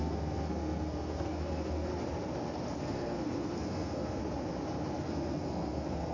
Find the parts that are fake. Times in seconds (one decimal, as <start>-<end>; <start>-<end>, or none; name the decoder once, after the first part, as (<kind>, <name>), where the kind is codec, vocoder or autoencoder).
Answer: 0.0-1.9 (codec, SNAC); 2.8-4.2; 5.0-6.1